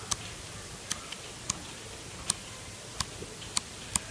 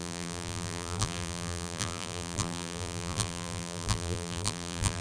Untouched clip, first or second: first